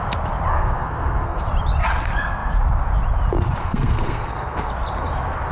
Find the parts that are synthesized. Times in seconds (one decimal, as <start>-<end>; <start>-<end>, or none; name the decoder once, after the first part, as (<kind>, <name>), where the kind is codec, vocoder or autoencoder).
0.5-1.4 (codec, SNAC); 3.6-4.7